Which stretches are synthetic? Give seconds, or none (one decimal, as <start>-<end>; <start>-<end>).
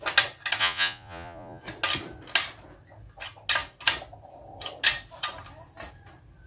0.6-1.6